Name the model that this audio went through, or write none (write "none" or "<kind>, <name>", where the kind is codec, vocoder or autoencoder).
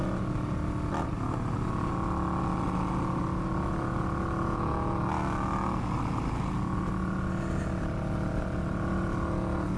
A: none